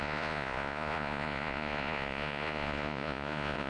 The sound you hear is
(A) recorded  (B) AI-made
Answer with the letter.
B